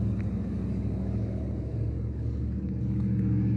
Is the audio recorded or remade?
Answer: remade